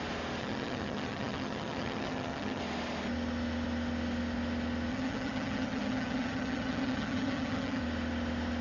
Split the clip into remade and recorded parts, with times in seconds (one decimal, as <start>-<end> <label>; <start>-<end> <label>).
0.0-0.4 recorded; 0.4-2.6 remade; 2.6-4.9 recorded; 4.9-7.8 remade; 7.8-8.6 recorded